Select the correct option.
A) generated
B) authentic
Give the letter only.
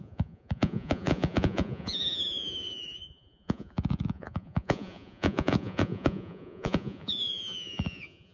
A